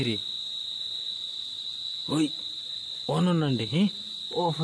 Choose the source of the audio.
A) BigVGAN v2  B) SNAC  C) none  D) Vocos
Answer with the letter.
C